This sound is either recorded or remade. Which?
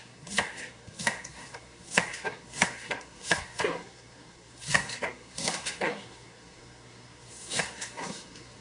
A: remade